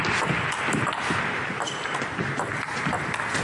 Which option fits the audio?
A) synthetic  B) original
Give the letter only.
B